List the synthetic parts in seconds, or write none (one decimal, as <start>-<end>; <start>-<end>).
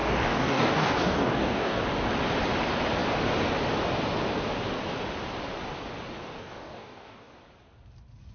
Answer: 0.0-1.8; 6.4-7.3